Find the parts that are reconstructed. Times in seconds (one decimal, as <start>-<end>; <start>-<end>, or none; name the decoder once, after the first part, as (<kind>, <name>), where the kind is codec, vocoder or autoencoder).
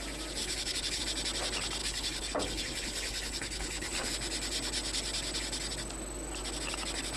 0.4-1.0 (codec, HILCodec); 1.8-4.1